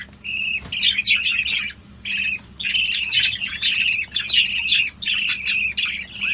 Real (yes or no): yes